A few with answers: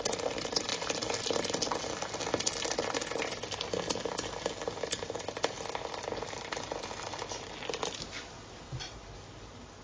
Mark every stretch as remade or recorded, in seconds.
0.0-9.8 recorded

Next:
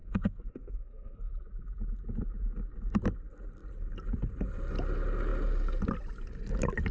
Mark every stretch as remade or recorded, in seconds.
0.0-1.3 remade; 1.3-6.9 recorded

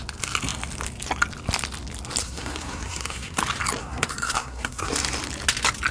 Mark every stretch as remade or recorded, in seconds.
0.0-2.2 recorded; 2.2-3.4 remade; 3.4-3.8 recorded; 3.8-4.9 remade; 4.9-5.9 recorded

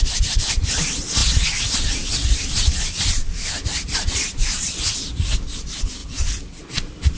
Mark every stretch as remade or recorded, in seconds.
0.0-7.2 recorded

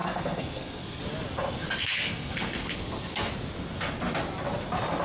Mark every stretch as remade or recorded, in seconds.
0.0-1.0 remade; 1.0-1.8 recorded; 1.8-3.3 remade; 3.3-5.0 recorded